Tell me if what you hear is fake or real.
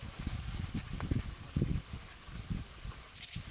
real